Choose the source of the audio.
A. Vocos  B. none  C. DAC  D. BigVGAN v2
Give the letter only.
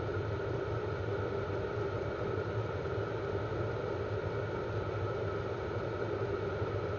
B